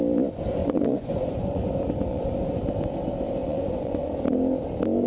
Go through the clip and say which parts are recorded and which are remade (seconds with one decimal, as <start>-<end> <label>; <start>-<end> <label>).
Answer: 0.0-0.6 recorded; 0.6-1.7 remade; 1.7-2.1 recorded; 2.1-2.6 remade; 2.6-3.4 recorded; 3.4-4.1 remade; 4.1-5.1 recorded